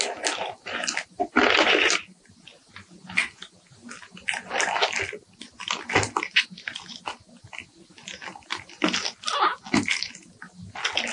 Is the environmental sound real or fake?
real